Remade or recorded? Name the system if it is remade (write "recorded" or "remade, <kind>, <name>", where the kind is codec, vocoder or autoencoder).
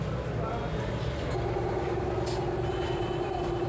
recorded